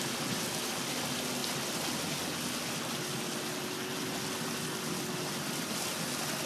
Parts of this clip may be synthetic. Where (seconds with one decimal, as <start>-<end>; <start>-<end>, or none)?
none